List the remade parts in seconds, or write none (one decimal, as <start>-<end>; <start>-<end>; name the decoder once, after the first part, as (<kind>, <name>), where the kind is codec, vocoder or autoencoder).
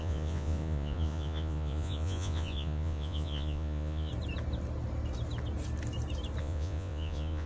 0.0-4.1 (vocoder, Vocos); 6.4-7.5